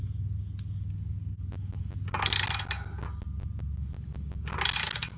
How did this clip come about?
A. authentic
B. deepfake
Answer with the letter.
A